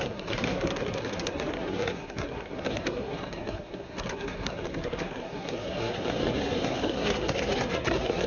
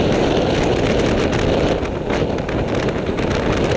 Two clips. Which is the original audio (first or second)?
second